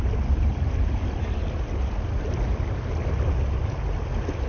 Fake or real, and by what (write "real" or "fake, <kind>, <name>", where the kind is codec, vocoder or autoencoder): real